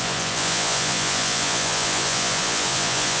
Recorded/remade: remade